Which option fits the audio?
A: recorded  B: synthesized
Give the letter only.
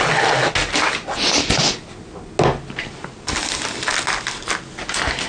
A